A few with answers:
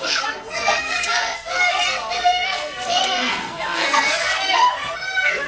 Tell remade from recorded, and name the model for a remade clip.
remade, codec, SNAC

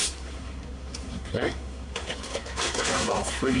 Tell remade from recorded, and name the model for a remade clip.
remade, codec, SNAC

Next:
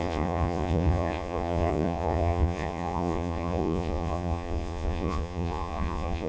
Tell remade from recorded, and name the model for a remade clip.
remade, vocoder, Vocos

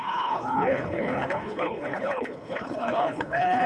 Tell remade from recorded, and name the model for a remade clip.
remade, codec, HILCodec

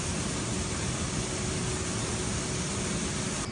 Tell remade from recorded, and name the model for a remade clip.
recorded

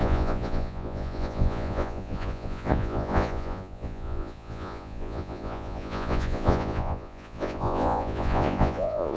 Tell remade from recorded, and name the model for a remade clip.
remade, vocoder, Vocos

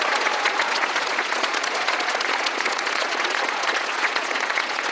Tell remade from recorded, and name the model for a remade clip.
remade, vocoder, Vocos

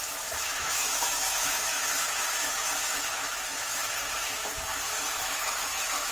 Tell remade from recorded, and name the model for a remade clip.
remade, autoencoder, DAC-VAE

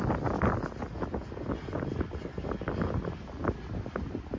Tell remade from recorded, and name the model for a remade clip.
recorded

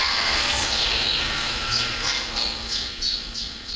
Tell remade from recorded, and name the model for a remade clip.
remade, codec, SNAC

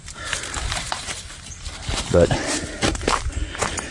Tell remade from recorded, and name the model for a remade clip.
remade, vocoder, BigVGAN v2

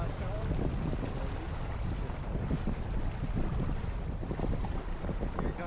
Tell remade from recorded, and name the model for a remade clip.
recorded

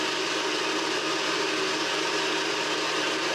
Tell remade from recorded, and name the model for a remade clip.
recorded